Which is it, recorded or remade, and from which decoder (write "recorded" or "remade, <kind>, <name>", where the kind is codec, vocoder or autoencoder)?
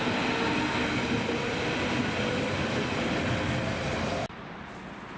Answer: recorded